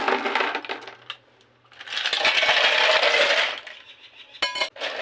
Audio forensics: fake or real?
real